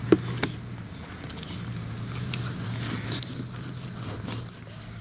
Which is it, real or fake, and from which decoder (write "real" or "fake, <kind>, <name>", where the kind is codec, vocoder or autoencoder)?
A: real